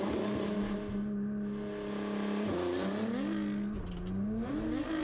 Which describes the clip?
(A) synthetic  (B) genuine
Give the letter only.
B